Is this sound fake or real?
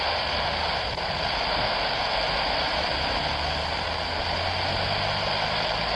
real